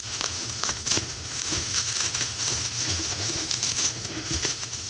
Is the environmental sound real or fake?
fake